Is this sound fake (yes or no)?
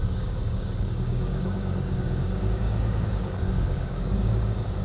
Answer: yes